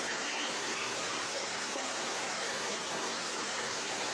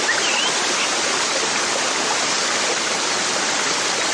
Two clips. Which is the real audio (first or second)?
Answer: second